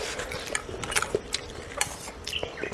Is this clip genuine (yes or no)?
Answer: yes